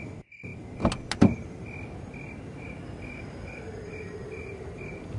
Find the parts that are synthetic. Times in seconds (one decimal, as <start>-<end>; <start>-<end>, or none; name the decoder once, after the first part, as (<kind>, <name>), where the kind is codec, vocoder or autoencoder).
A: none